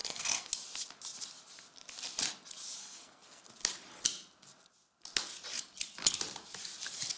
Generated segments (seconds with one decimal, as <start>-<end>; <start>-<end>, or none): 0.0-0.5; 2.8-3.5